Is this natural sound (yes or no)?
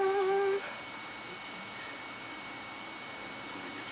yes